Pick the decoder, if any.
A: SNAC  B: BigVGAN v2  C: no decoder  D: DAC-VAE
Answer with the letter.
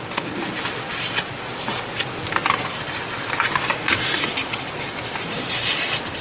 C